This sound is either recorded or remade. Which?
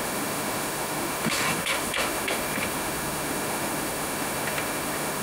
remade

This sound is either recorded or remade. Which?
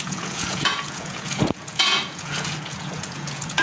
remade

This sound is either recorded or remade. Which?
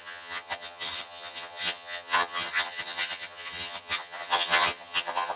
remade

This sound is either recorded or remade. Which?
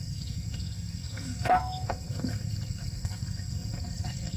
remade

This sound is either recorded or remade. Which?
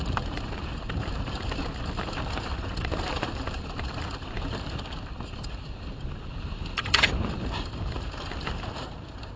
remade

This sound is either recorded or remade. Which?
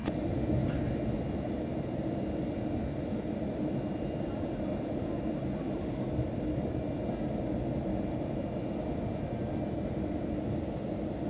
recorded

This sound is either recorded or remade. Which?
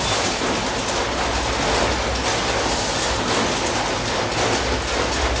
recorded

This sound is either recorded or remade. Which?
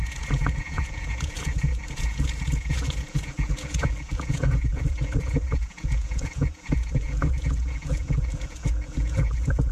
remade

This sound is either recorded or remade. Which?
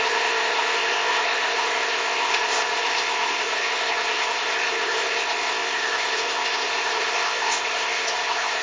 remade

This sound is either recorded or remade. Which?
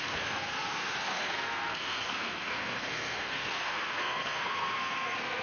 remade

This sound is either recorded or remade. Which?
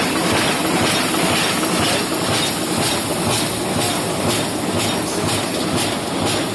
recorded